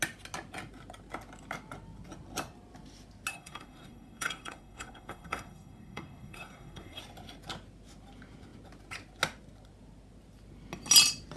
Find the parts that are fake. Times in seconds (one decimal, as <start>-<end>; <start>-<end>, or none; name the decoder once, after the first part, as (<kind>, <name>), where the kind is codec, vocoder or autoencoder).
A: 3.3-7.0 (codec, SNAC)